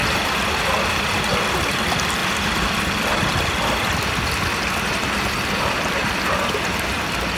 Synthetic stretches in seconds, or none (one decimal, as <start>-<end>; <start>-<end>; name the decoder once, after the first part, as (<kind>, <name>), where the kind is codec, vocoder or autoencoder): 0.0-7.4 (vocoder, BigVGAN v2)